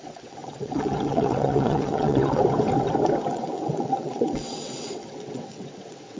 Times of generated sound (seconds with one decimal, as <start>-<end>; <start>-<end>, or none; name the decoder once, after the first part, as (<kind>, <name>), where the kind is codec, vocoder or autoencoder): 0.0-2.4 (vocoder, WaveNeXt); 3.3-6.2